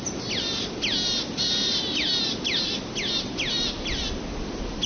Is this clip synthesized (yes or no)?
no